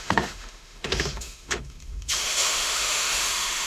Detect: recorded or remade remade